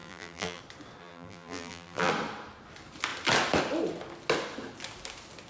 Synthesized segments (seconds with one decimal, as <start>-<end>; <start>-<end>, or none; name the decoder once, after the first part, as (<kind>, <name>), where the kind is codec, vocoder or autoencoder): 0.0-0.6 (vocoder, BigVGAN v2); 1.0-2.1

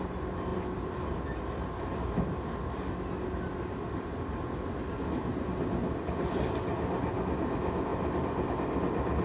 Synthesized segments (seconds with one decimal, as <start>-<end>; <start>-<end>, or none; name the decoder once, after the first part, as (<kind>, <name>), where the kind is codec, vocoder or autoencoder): 0.5-1.2 (vocoder, BigVGAN v2); 7.9-8.5

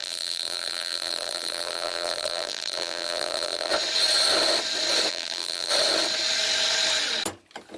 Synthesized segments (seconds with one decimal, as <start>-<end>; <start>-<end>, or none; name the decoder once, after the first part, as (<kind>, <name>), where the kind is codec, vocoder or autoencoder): 0.0-3.7 (vocoder, BigVGAN v2); 5.1-5.7

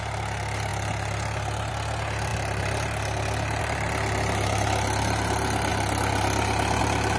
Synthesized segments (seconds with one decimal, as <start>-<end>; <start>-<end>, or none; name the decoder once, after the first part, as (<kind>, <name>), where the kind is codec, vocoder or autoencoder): none

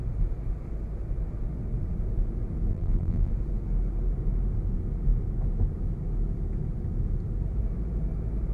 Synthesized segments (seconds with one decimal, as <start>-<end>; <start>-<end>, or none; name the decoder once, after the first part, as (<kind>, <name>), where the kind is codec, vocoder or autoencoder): 2.7-3.3 (vocoder, BigVGAN v2)

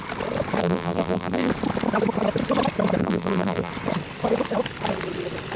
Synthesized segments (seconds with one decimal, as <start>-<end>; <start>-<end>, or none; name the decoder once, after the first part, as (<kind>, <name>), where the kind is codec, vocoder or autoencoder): 0.6-1.5 (vocoder, BigVGAN v2); 3.0-3.7